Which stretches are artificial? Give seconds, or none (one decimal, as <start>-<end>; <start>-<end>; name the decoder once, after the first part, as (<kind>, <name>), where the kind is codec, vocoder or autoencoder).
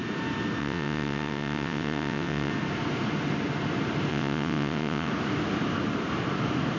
0.6-2.5 (vocoder, WaveNeXt); 4.1-5.1